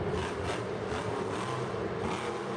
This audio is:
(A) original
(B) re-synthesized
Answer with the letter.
A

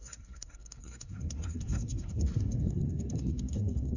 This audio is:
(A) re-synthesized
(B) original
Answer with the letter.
A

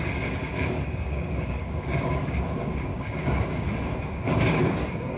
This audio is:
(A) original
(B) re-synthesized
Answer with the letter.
B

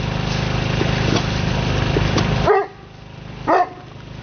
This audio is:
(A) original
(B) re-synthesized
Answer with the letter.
A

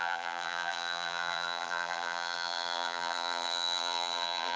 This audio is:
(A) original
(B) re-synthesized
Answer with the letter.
B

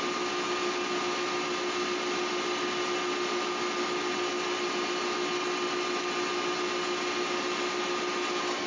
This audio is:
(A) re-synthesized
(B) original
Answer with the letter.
B